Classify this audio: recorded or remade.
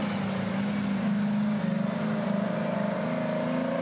recorded